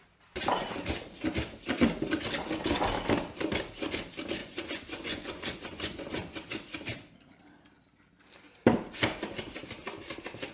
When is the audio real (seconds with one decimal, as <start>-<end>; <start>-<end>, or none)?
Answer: 0.0-4.4; 6.0-10.5